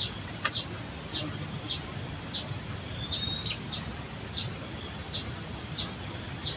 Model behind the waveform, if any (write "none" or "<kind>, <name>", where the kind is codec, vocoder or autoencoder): none